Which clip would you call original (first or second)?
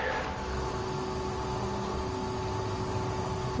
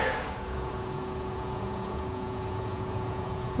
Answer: first